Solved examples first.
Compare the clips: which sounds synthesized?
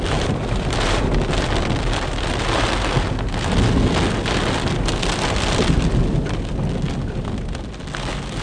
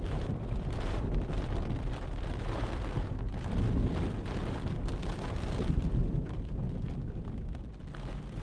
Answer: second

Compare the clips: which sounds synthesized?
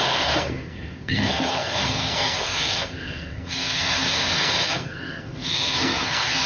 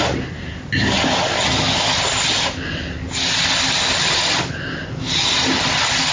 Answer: first